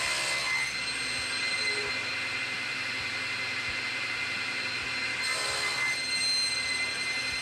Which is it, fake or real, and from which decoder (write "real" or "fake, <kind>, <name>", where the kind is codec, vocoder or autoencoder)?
real